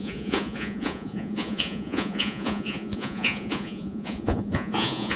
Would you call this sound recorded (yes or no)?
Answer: no